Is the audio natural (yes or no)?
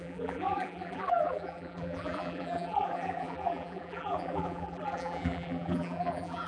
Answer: no